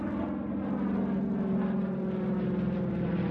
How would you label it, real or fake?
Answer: real